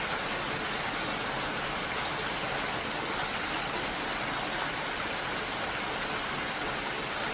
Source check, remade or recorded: recorded